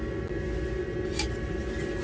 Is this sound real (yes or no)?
yes